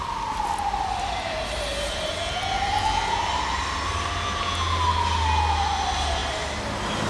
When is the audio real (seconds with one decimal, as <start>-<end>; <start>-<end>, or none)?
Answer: 0.8-1.7; 3.4-7.1